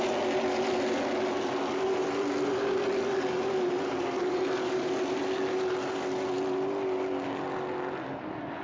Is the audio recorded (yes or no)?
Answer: yes